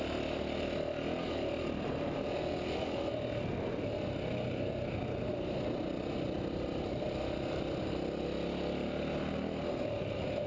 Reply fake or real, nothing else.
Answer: real